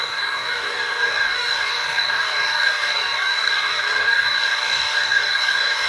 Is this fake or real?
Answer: fake